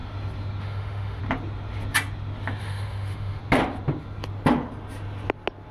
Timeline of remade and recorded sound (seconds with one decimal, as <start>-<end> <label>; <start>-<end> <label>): 0.0-0.6 recorded; 0.6-1.2 remade; 1.2-2.6 recorded; 2.6-3.4 remade; 3.4-5.7 recorded